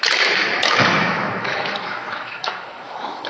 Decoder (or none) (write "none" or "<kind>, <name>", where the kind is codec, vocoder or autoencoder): autoencoder, DAC-VAE